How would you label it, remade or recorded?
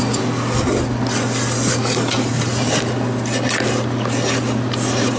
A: recorded